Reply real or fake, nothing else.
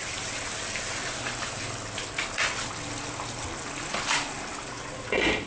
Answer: real